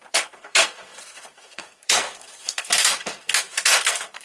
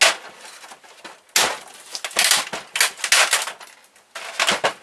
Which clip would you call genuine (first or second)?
second